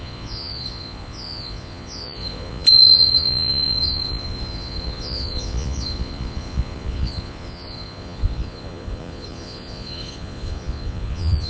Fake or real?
fake